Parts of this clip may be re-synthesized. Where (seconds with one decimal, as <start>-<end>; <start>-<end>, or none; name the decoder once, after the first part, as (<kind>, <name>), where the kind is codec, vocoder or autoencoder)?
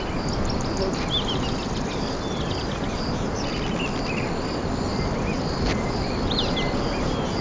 none